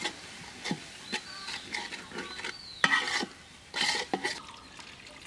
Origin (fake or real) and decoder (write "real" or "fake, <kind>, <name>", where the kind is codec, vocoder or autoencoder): real